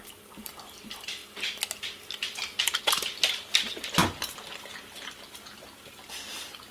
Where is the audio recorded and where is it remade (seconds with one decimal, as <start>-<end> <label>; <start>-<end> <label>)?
0.0-1.2 remade; 1.2-2.8 recorded; 2.8-6.7 remade